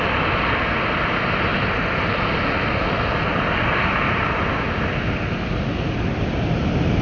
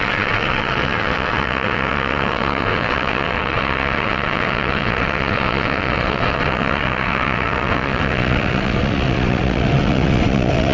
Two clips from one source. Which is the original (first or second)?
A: first